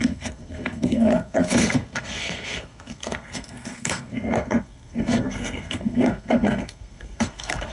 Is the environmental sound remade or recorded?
remade